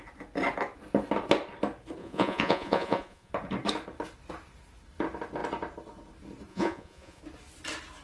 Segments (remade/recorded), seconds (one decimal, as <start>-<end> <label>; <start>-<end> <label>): 0.0-2.0 recorded; 2.0-3.3 remade; 3.3-6.5 recorded; 6.5-7.2 remade; 7.2-8.0 recorded